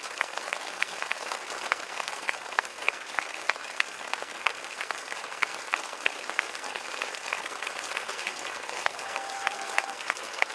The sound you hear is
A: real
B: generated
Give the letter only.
B